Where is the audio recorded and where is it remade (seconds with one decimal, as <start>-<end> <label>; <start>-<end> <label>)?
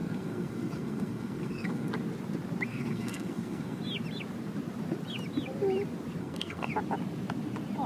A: 0.0-1.9 remade; 1.9-2.7 recorded; 2.7-3.8 remade; 3.8-6.2 recorded; 6.2-6.7 remade; 6.7-7.9 recorded